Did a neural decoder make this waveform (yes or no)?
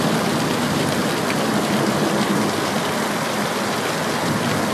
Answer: no